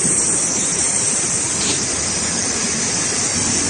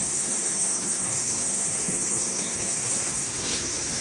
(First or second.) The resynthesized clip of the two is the second